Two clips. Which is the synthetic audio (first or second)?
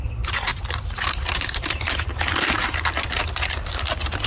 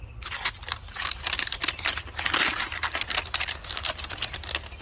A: first